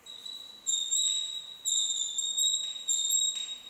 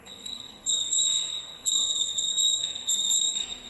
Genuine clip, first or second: first